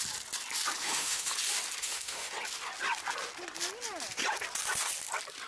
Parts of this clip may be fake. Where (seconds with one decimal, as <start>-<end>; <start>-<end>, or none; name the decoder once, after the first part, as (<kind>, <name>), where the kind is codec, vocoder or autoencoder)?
0.8-1.3 (autoencoder, DAC-VAE); 1.8-2.3